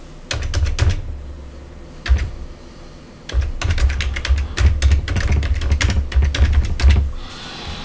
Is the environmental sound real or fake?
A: real